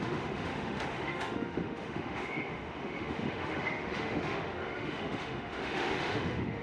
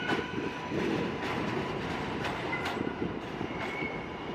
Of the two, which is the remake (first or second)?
first